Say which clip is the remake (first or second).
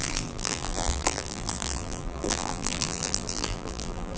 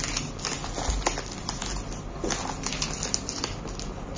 first